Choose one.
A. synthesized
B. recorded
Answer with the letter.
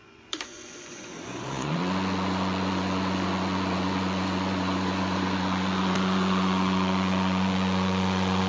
A